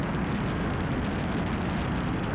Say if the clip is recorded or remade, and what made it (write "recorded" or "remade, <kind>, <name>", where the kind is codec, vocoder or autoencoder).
recorded